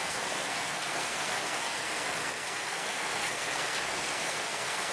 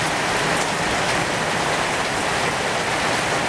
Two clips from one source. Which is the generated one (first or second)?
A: first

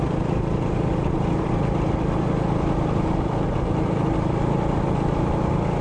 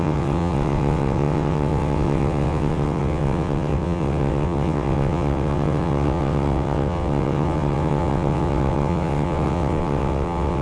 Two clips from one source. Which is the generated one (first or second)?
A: second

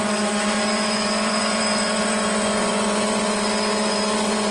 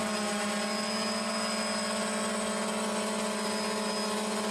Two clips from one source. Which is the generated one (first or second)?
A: first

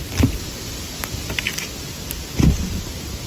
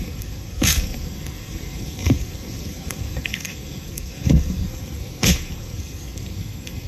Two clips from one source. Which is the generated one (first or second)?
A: second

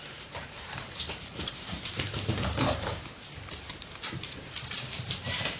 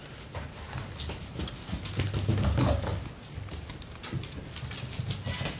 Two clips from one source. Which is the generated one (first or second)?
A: first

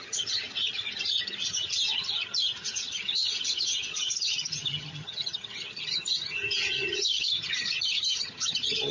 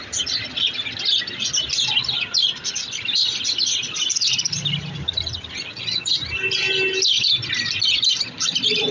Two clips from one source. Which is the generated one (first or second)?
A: first